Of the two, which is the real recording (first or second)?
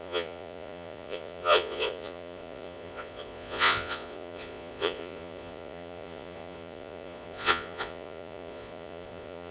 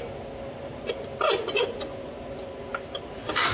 second